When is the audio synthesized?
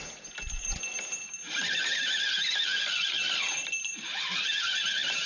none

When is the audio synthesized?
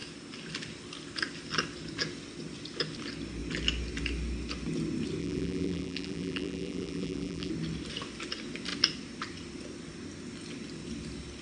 5.2-7.5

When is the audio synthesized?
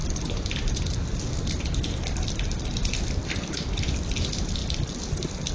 0.0-3.3; 4.6-5.5